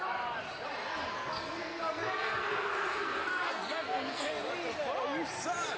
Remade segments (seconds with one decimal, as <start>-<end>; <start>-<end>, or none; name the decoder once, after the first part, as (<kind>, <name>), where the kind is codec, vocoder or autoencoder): 1.1-4.3 (codec, SNAC)